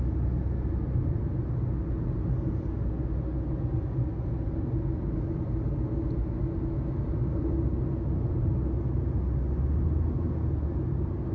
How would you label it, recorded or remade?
recorded